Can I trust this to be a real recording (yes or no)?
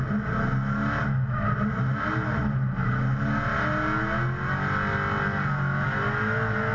yes